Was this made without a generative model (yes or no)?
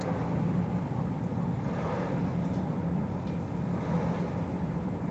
yes